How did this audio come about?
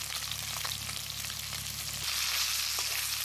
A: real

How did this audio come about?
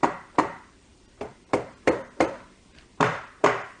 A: fake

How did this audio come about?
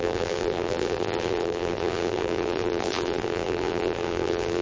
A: fake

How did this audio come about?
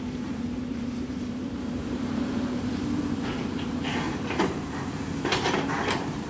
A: fake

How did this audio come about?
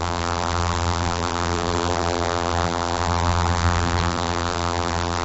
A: fake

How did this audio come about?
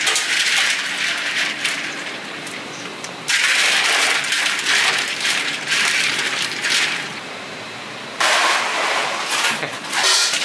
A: fake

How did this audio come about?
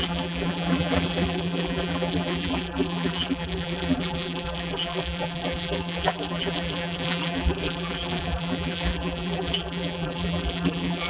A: fake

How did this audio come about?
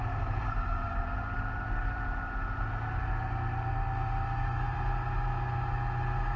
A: real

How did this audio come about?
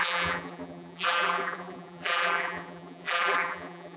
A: fake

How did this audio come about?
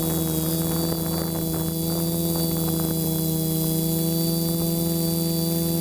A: real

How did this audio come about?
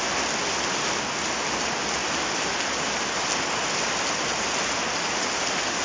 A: real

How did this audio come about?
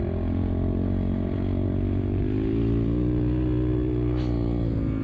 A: real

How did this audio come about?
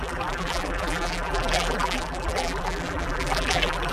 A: fake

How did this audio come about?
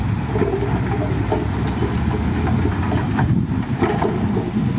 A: fake